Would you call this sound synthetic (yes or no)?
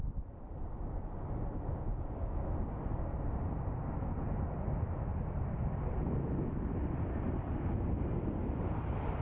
no